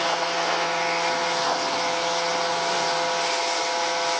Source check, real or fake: real